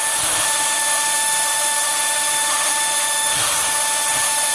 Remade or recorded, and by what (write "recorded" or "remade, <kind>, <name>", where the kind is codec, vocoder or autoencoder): remade, autoencoder, DAC-VAE